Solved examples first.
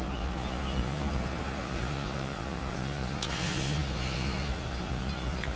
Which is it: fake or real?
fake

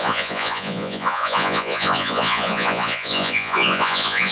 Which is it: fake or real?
fake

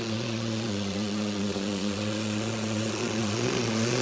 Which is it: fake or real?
fake